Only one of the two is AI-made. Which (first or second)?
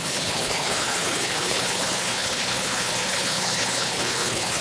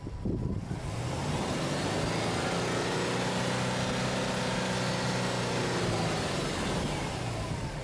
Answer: first